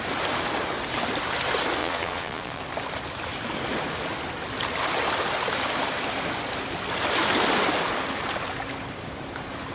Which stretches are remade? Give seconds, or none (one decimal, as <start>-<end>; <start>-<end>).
1.8-2.6